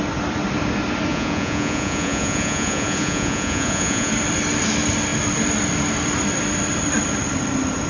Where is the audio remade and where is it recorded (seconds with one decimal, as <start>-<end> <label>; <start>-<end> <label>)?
0.0-1.1 recorded; 1.1-4.1 remade; 4.1-7.9 recorded

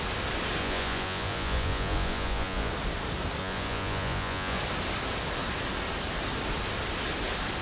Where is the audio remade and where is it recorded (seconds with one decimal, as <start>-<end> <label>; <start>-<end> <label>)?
0.0-0.6 recorded; 0.6-2.7 remade; 2.7-3.4 recorded; 3.4-4.6 remade; 4.6-7.6 recorded

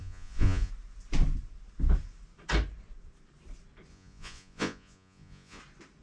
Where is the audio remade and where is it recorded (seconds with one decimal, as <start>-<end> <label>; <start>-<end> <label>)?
0.0-0.7 remade; 0.7-3.9 recorded; 3.9-5.6 remade; 5.6-6.0 recorded

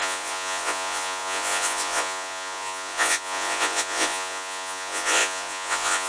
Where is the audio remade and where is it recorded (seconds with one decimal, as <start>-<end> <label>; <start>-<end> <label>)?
0.0-6.1 remade